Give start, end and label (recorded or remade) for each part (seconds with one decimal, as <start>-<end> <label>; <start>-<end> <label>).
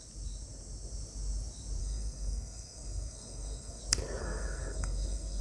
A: 0.0-1.8 recorded; 1.8-3.8 remade; 3.8-4.2 recorded; 4.2-5.4 remade